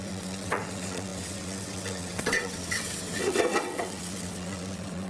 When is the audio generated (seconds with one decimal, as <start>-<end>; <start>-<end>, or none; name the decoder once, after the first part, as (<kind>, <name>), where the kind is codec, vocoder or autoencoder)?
0.0-5.1 (vocoder, WaveNeXt)